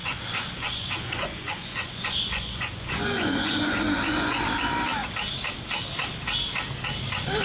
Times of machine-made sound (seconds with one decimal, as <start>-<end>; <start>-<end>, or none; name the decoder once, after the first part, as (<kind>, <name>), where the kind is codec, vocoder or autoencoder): 0.0-4.4 (vocoder, Vocos)